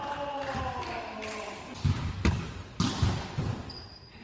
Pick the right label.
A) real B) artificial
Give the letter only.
A